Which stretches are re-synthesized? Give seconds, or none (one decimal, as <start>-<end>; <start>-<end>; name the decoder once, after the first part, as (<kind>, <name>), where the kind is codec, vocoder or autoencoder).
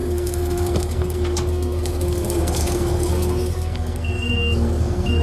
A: 0.0-5.2 (codec, SNAC)